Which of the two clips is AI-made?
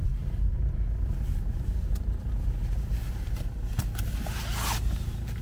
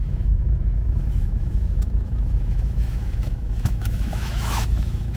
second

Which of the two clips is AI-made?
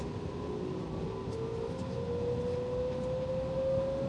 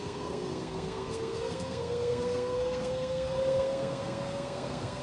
second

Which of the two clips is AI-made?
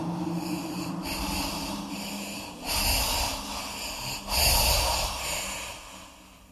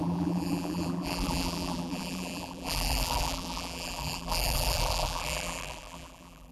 second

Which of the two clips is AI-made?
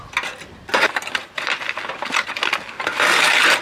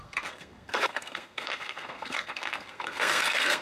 second